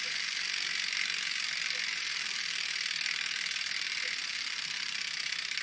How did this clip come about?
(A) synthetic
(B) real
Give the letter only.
B